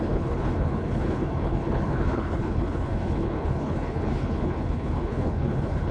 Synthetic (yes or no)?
yes